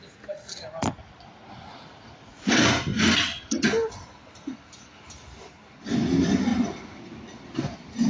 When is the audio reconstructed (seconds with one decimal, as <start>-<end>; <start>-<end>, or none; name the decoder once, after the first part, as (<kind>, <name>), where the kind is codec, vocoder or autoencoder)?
1.7-2.5 (vocoder, Vocos)